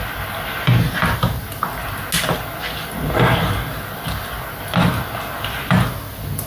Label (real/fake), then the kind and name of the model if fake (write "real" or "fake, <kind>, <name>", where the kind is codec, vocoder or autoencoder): real